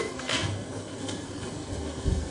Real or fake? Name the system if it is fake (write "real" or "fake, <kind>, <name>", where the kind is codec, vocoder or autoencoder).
fake, codec, SNAC